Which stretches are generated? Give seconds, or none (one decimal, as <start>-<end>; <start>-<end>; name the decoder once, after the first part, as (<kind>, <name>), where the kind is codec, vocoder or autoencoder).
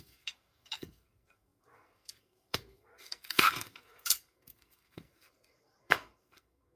0.0-6.8 (codec, SNAC)